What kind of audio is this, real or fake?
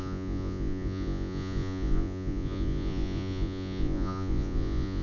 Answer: fake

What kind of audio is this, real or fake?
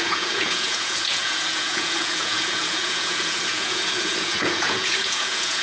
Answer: fake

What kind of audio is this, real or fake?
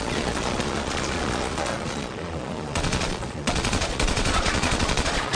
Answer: fake